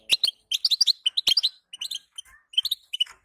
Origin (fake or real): real